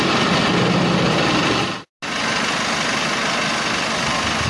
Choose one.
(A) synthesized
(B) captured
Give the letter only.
B